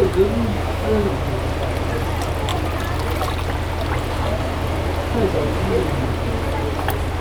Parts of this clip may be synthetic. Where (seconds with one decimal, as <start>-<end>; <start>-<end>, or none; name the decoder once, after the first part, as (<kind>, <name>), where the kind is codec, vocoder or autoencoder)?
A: 0.5-1.1 (autoencoder, DAC-VAE)

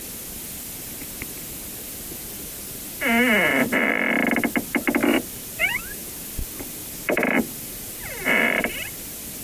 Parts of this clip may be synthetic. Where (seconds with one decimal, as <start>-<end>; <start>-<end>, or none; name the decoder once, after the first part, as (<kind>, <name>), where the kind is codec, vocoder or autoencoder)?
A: 3.5-4.1 (vocoder, BigVGAN v2); 5.0-5.6; 6.8-8.6